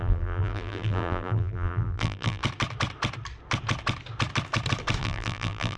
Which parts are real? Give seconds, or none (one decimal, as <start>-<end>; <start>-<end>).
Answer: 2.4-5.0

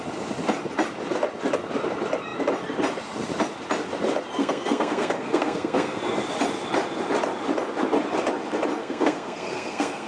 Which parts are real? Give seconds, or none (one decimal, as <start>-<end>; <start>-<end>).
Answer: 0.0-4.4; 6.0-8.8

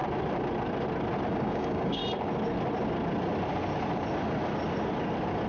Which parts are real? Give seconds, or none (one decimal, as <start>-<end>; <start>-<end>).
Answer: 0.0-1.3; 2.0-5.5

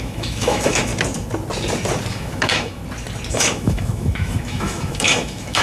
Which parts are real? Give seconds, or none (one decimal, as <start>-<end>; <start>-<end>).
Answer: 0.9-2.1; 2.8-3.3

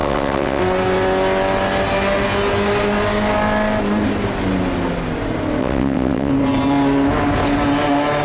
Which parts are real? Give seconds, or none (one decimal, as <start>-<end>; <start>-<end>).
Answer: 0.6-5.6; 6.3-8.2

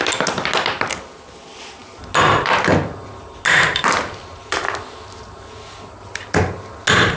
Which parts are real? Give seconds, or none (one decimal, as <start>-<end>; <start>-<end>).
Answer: 0.0-7.2